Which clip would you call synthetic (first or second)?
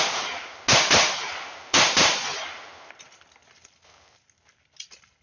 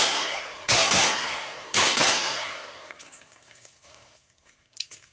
second